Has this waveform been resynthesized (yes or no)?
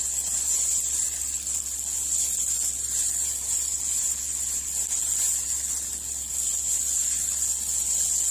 no